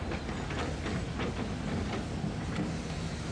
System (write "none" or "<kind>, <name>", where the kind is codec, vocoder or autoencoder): none